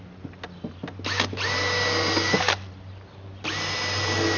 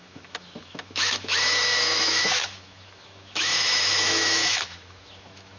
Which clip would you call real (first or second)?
first